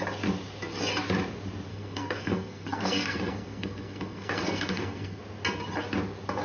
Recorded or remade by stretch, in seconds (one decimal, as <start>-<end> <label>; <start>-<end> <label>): 0.0-1.7 recorded; 1.7-5.2 remade; 5.2-6.4 recorded